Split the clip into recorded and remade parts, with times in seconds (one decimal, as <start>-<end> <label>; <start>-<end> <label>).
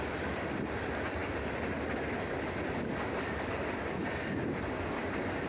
0.0-5.5 recorded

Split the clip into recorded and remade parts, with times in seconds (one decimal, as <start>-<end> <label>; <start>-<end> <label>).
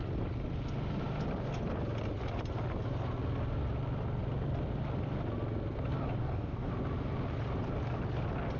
0.0-6.2 recorded; 6.2-6.7 remade; 6.7-8.6 recorded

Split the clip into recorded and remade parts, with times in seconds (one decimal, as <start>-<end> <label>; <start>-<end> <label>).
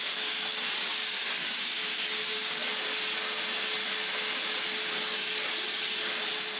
0.0-2.6 remade; 2.6-6.6 recorded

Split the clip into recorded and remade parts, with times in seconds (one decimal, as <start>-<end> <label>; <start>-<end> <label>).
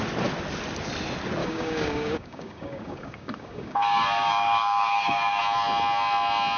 0.0-1.4 recorded; 1.4-5.4 remade; 5.4-6.6 recorded